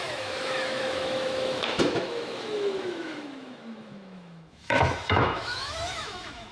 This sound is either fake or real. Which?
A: fake